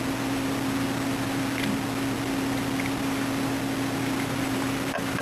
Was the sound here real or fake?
fake